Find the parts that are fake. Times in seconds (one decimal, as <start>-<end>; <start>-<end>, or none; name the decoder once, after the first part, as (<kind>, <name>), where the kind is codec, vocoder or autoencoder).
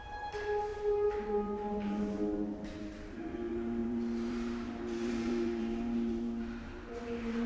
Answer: 0.0-7.5 (vocoder, BigVGAN v2)